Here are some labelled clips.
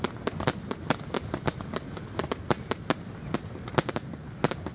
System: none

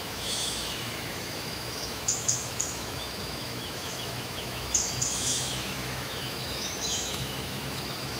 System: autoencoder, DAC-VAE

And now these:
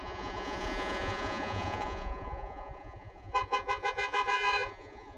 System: vocoder, Vocos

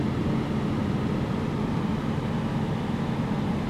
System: none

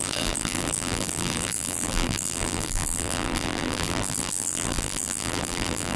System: vocoder, BigVGAN v2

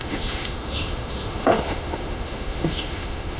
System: autoencoder, DAC-VAE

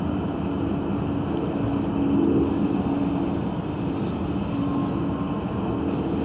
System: none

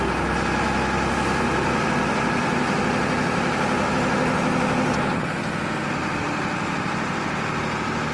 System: none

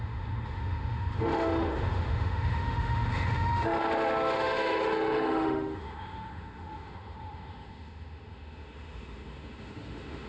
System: autoencoder, DAC-VAE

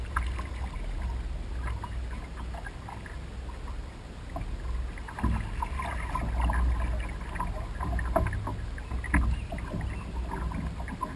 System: none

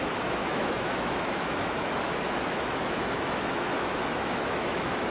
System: autoencoder, DAC-VAE